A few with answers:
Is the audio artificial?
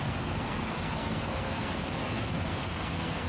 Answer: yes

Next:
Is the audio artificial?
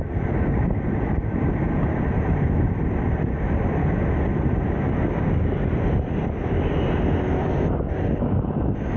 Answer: no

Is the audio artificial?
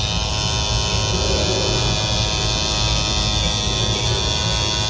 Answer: no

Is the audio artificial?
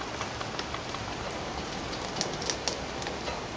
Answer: no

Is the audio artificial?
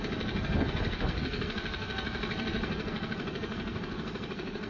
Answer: yes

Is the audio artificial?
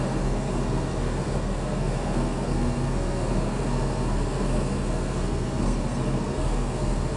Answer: yes